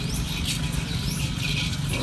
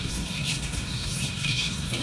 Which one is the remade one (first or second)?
second